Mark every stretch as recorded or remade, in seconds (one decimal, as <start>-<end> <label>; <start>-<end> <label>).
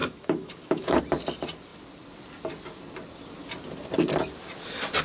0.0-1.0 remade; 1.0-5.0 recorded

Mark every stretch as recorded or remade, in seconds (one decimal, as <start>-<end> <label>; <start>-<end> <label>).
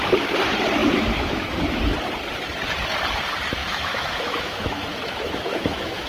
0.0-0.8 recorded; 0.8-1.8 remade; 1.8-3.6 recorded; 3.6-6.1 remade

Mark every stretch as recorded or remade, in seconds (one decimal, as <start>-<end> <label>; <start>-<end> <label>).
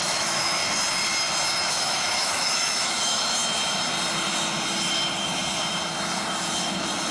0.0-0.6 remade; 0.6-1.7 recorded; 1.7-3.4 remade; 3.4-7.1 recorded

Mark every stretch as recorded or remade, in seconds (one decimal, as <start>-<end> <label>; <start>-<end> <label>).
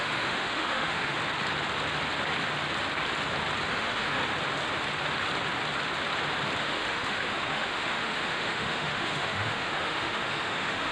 0.0-1.2 remade; 1.2-3.7 recorded; 3.7-4.2 remade; 4.2-6.6 recorded; 6.6-10.9 remade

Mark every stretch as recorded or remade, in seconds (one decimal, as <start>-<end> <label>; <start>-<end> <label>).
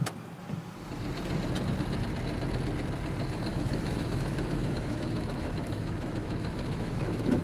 0.0-3.5 recorded; 3.5-7.4 remade